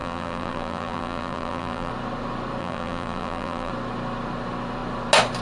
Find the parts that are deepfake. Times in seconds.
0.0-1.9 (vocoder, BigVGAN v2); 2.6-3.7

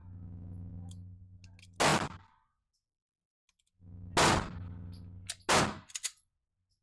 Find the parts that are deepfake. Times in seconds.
none

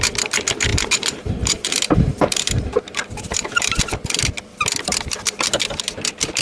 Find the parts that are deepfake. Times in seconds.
0.7-3.8 (vocoder, BigVGAN v2)

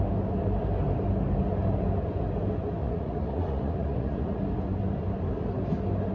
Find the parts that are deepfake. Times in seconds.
2.8-4.4 (vocoder, Vocos)